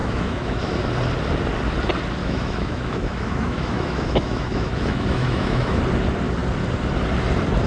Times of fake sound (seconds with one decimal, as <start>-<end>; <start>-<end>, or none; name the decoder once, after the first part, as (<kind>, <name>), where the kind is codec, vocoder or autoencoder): 0.0-0.6 (autoencoder, DAC-VAE); 2.2-5.8